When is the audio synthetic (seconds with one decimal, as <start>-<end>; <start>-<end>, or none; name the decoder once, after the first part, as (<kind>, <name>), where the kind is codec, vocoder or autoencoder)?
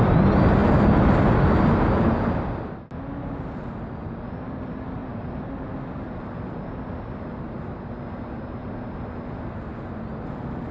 none